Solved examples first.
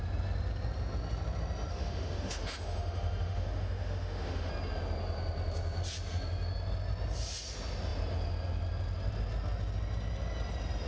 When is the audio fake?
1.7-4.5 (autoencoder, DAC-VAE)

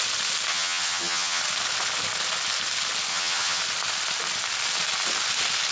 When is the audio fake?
0.5-1.4 (vocoder, HiFi-GAN); 3.1-3.6

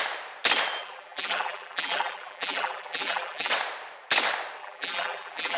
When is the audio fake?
0.8-3.5 (vocoder, BigVGAN v2); 4.6-5.6